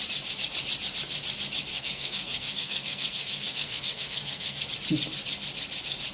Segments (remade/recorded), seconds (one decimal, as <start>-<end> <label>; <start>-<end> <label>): 0.0-1.7 recorded; 1.7-4.7 remade; 4.7-6.1 recorded